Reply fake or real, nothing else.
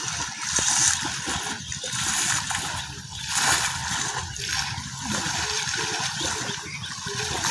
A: real